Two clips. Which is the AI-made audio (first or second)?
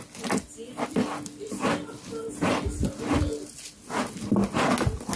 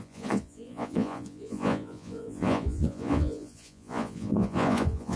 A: second